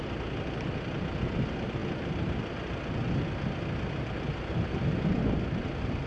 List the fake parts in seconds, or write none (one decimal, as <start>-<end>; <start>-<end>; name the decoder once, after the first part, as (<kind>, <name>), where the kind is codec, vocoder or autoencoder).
none